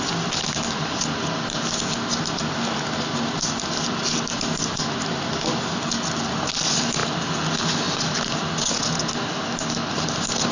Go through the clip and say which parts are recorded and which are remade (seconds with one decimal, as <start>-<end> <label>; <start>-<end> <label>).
0.0-10.5 recorded